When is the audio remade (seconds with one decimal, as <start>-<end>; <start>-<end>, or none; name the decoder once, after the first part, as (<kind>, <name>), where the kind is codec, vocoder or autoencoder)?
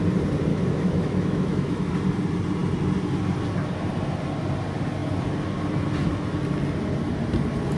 0.5-1.9 (autoencoder, DAC-VAE)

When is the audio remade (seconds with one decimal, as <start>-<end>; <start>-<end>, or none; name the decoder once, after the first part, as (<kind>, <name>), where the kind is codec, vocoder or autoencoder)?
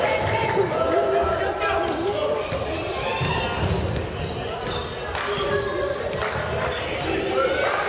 none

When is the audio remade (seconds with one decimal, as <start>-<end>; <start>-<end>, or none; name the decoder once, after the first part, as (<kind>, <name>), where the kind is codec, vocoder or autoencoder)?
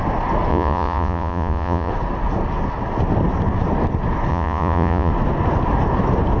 0.5-1.9 (vocoder, Vocos); 4.3-5.1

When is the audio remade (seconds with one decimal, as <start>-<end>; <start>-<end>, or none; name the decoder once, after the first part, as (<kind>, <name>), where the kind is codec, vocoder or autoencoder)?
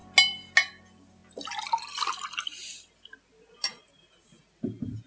none